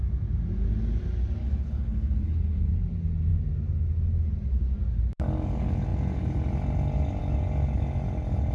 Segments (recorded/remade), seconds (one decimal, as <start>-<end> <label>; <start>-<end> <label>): 0.0-1.4 recorded; 1.4-2.7 remade; 2.7-8.5 recorded